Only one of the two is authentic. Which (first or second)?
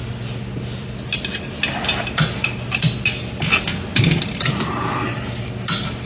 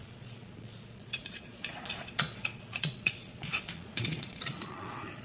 first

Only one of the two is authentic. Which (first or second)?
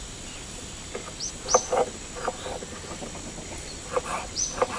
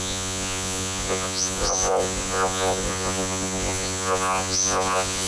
first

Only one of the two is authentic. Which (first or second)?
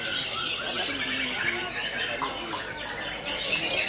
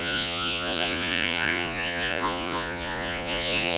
first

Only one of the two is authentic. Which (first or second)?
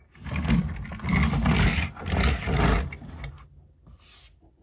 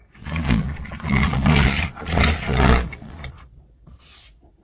first